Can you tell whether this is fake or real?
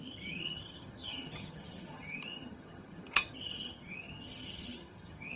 fake